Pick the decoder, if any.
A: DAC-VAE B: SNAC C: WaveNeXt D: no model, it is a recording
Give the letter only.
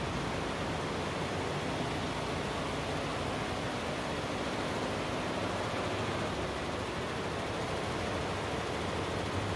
D